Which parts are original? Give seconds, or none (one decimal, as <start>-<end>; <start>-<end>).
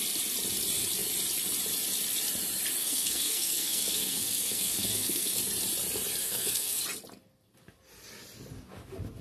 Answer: 0.0-2.8; 5.4-6.2; 6.8-9.2